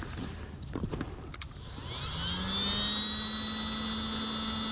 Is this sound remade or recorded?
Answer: recorded